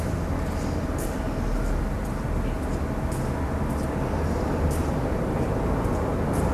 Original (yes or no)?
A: yes